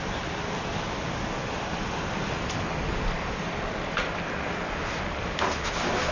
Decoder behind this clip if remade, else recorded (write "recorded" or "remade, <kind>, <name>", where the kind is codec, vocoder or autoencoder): recorded